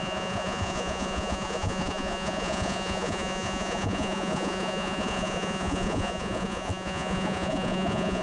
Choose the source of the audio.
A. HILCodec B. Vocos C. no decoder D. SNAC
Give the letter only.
B